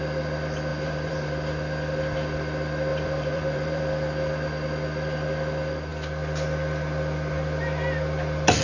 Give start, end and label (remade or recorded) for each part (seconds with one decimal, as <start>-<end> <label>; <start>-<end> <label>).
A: 0.0-0.7 recorded; 0.7-1.3 remade; 1.3-2.9 recorded; 2.9-3.8 remade; 3.8-8.6 recorded